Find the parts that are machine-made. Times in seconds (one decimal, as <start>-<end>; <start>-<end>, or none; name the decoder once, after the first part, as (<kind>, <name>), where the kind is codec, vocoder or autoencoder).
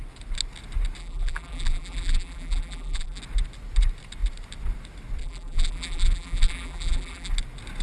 1.0-3.2 (vocoder, BigVGAN v2); 5.2-7.3